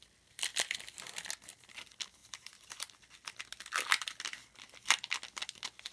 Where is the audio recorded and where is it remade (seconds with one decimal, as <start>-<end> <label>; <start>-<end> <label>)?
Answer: 0.0-5.9 recorded

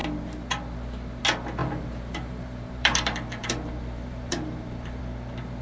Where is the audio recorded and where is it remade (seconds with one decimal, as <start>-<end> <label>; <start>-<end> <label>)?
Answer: 0.0-1.6 recorded; 1.6-5.0 remade; 5.0-5.6 recorded

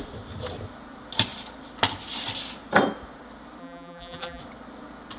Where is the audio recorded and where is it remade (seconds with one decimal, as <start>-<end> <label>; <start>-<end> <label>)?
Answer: 0.0-3.6 recorded; 3.6-4.4 remade; 4.4-5.2 recorded

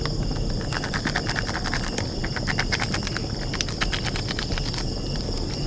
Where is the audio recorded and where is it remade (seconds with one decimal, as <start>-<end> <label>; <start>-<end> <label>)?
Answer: 0.0-5.7 recorded